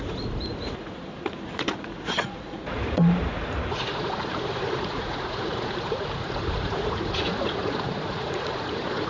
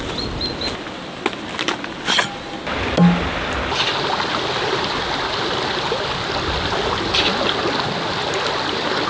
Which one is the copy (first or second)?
first